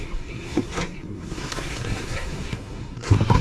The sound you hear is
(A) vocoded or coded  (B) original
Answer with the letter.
A